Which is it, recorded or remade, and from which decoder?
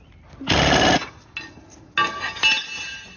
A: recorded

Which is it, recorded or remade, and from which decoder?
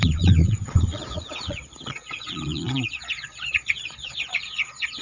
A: remade, vocoder, Vocos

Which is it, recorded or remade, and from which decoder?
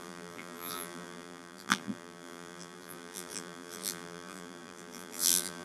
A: remade, vocoder, BigVGAN v2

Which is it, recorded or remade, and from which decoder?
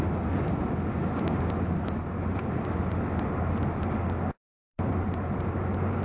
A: recorded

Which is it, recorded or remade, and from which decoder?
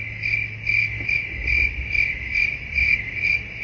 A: recorded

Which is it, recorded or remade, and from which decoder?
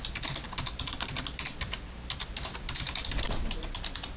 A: recorded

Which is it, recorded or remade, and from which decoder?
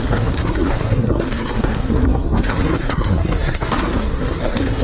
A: remade, codec, SNAC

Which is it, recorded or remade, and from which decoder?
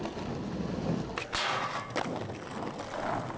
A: recorded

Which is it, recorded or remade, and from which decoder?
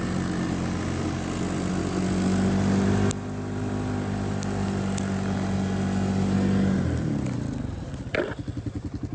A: recorded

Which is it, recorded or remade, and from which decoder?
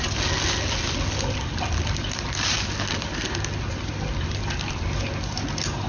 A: recorded